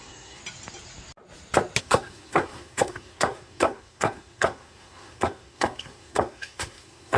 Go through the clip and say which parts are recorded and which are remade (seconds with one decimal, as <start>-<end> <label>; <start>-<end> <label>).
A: 0.0-0.4 remade; 0.4-1.8 recorded; 1.8-7.2 remade